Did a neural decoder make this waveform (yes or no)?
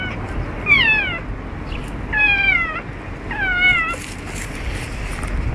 no